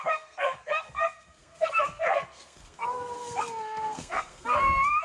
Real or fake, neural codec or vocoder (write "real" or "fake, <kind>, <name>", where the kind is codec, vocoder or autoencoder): fake, codec, SNAC